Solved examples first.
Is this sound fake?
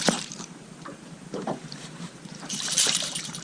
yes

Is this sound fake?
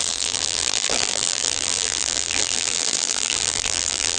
yes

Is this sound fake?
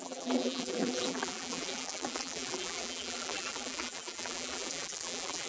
yes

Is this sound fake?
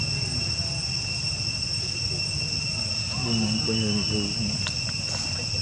no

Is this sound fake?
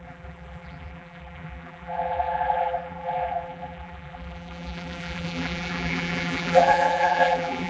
yes